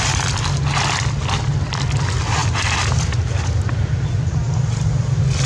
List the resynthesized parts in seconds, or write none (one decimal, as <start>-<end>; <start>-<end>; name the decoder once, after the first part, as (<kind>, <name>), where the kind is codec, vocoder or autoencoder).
none